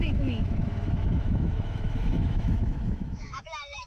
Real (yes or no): no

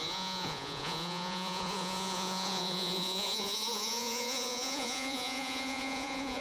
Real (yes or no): no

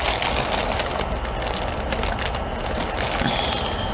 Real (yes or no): yes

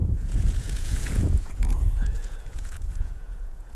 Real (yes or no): no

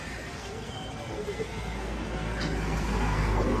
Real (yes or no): no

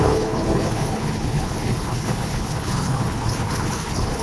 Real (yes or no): no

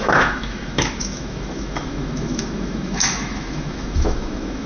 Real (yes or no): no